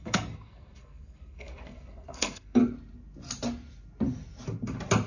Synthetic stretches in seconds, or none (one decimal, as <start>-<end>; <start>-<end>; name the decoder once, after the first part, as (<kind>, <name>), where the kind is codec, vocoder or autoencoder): 0.0-2.6 (codec, SNAC)

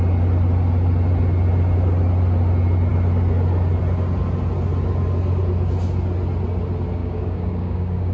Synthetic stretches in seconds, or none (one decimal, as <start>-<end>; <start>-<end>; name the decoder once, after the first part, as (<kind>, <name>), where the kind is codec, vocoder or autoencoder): 7.0-8.1 (codec, DAC)

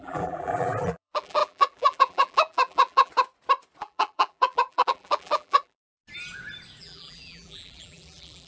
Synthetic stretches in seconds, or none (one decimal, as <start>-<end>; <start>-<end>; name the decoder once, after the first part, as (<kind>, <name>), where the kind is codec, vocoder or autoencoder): 0.0-3.1 (vocoder, BigVGAN v2); 3.8-6.0; 6.8-8.5

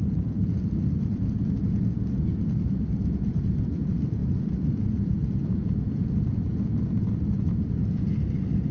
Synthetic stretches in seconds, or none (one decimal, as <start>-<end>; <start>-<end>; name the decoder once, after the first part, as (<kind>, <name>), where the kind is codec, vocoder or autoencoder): 0.0-8.1 (vocoder, Vocos)